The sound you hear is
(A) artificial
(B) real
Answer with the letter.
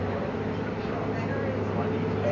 B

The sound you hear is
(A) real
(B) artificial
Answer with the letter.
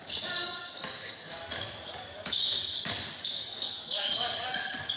B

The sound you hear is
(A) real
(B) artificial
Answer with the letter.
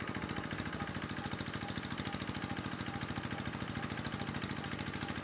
A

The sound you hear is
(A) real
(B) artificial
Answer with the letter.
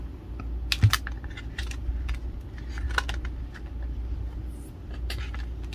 A